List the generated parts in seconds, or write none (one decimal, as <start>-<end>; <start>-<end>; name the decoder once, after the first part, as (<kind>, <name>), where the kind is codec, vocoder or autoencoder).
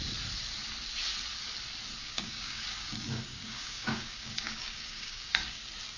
2.0-5.6 (codec, DAC)